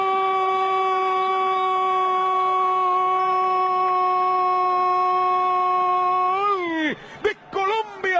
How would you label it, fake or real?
real